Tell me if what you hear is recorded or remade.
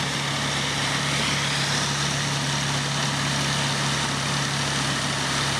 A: recorded